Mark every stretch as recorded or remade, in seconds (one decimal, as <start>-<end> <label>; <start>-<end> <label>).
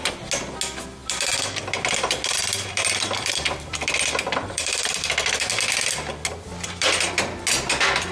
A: 0.0-1.0 recorded; 1.0-3.9 remade; 3.9-4.4 recorded; 4.4-5.5 remade; 5.5-6.5 recorded; 6.5-7.1 remade; 7.1-8.1 recorded